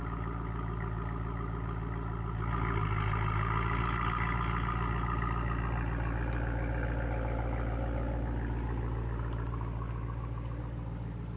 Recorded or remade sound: recorded